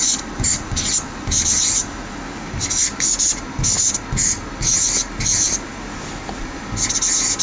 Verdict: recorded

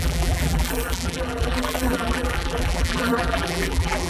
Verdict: remade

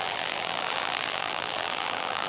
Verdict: remade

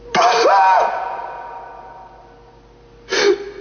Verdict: recorded